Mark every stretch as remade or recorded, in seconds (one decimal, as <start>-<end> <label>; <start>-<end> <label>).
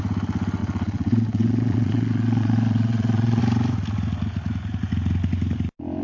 0.0-0.6 recorded; 0.6-3.4 remade; 3.4-6.0 recorded